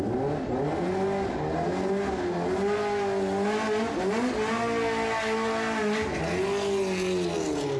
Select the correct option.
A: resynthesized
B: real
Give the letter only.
B